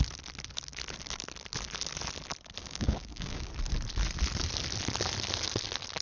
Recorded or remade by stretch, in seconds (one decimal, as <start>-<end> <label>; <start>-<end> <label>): 0.0-2.6 recorded; 2.6-3.5 remade; 3.5-6.0 recorded